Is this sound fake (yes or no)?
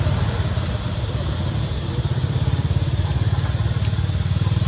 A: no